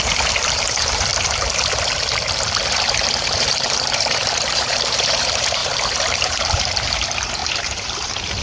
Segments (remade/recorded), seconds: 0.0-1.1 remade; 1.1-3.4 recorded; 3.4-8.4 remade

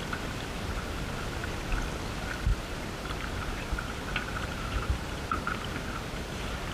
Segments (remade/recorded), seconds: 0.0-2.5 recorded; 2.5-6.7 remade